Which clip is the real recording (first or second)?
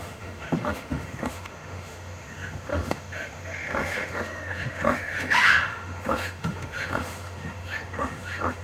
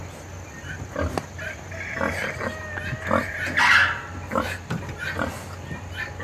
second